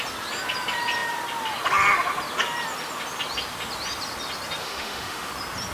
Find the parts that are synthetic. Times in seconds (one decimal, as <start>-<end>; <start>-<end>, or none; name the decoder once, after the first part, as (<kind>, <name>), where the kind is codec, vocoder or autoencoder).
4.6-5.3 (autoencoder, DAC-VAE)